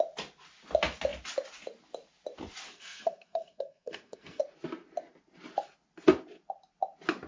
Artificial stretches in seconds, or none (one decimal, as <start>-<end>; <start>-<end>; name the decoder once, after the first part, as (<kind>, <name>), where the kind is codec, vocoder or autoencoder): 2.7-4.4 (codec, SNAC)